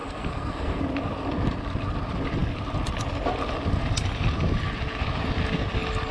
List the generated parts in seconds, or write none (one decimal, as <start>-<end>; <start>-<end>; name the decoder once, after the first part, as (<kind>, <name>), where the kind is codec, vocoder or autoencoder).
0.0-0.8 (codec, SNAC)